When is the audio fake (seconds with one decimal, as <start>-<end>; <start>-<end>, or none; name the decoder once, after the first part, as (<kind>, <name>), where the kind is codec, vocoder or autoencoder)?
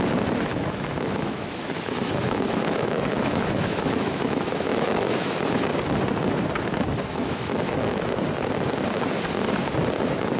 0.5-5.4 (autoencoder, DAC-VAE); 7.1-8.1